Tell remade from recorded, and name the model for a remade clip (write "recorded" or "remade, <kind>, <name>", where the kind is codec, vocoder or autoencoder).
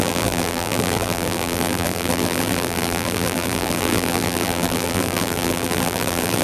remade, vocoder, BigVGAN v2